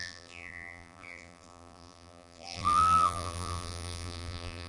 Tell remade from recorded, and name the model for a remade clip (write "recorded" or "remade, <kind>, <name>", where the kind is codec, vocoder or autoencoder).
remade, vocoder, BigVGAN v2